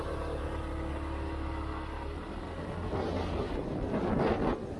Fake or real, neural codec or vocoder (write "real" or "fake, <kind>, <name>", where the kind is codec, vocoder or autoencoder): real